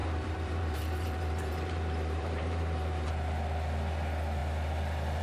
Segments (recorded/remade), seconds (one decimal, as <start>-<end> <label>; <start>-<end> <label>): 0.0-3.1 remade; 3.1-5.2 recorded